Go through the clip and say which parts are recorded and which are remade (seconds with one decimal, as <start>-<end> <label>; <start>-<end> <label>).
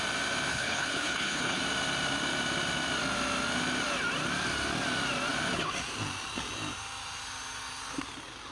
0.0-0.5 recorded; 0.5-1.6 remade; 1.6-8.5 recorded